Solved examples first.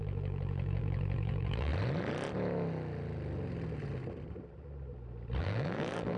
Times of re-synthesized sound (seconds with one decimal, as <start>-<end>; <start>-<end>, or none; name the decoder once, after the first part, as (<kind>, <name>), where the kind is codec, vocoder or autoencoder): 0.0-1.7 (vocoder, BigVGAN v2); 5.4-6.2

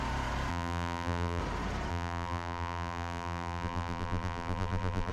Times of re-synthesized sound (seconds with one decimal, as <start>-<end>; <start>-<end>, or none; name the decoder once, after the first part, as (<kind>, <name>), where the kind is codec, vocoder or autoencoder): 0.5-1.4 (vocoder, BigVGAN v2); 1.9-5.1

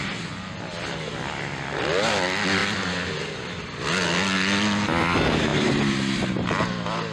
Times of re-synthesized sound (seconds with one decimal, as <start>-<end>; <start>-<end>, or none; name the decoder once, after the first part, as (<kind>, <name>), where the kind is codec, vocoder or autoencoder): 5.5-6.5 (vocoder, BigVGAN v2)